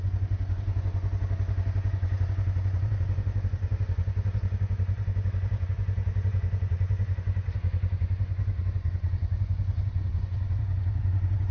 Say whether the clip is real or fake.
fake